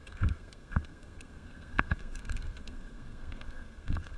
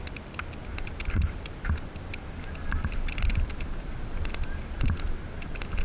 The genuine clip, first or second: second